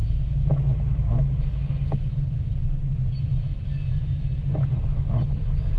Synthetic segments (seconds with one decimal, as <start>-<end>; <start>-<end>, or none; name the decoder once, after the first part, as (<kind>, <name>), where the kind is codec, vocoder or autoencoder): 0.0-1.7 (autoencoder, DAC-VAE)